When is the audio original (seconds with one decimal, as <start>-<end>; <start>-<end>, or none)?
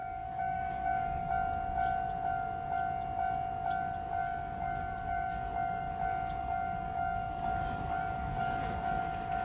1.3-4.2; 5.9-6.4; 9.0-9.4